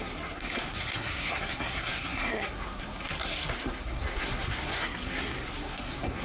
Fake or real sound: fake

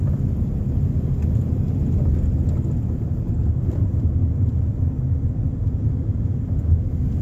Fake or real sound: real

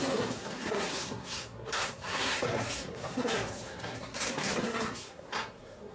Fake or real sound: fake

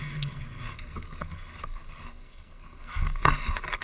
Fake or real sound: fake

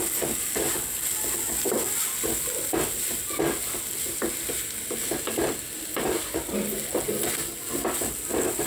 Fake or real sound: real